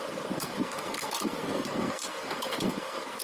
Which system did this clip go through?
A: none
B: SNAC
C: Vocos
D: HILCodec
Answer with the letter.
B